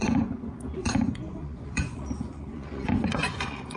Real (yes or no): no